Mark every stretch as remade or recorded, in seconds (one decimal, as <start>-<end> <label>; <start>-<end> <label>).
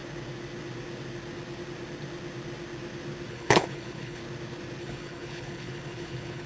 0.0-3.3 recorded; 3.3-4.2 remade; 4.2-4.8 recorded; 4.8-6.5 remade